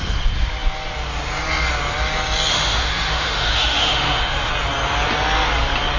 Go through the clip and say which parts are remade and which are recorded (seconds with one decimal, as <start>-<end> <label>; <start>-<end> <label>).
0.0-2.5 recorded; 2.5-4.5 remade; 4.5-6.0 recorded